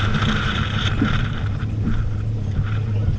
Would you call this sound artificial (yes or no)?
yes